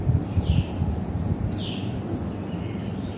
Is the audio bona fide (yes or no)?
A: yes